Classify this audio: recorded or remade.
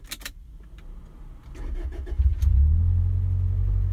recorded